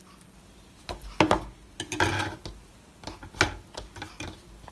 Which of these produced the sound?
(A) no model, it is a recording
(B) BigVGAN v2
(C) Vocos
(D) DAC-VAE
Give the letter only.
A